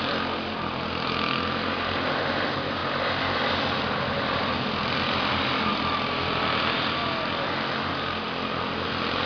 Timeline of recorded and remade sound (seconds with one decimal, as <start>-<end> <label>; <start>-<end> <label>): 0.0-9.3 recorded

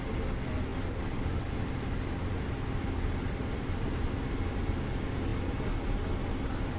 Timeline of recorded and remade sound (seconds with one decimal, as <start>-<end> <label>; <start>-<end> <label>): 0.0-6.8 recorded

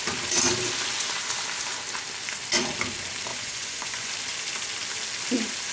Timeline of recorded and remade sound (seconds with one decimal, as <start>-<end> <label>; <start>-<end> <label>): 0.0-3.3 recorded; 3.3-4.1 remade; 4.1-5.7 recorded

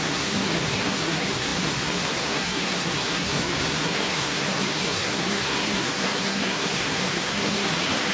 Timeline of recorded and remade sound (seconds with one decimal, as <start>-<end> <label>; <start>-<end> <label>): 0.0-8.1 remade

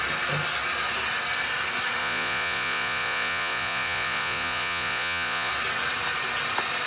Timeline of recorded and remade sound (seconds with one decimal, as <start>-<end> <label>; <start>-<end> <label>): 0.0-2.0 recorded; 2.0-5.5 remade; 5.5-6.9 recorded

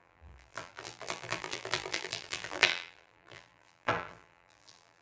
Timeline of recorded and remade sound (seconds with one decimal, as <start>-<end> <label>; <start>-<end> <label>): 0.0-5.0 remade

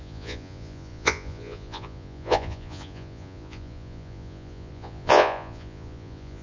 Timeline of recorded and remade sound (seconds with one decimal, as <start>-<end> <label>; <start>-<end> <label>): 0.0-6.4 remade

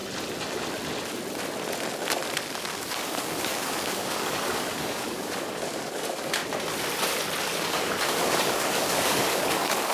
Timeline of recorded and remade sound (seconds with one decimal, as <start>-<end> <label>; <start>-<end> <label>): 0.0-2.5 recorded; 2.5-6.4 remade; 6.4-7.4 recorded; 7.4-9.9 remade